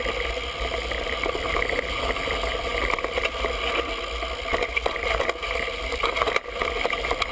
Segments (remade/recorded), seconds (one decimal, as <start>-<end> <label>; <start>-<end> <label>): 0.0-7.3 recorded